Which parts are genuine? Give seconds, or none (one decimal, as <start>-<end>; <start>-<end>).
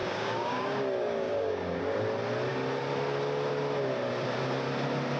1.8-5.2